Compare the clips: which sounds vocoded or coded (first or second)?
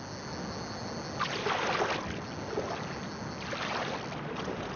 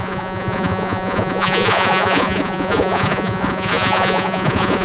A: second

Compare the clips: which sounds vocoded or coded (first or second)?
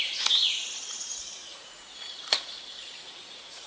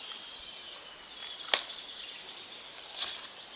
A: first